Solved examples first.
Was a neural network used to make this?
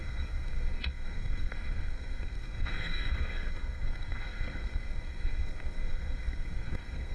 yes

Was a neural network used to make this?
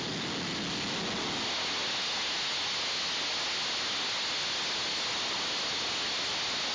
no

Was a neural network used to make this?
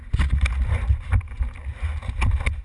no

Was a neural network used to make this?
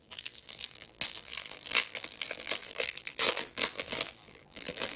yes